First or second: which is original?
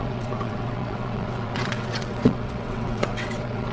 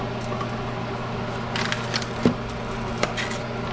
second